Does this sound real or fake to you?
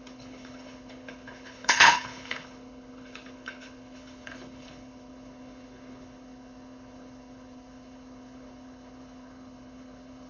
fake